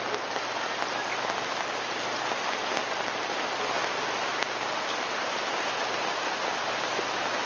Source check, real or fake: real